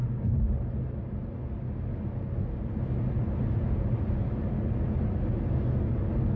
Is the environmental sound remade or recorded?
recorded